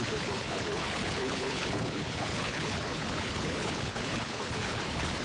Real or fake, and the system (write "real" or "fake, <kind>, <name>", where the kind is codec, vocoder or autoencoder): fake, codec, HILCodec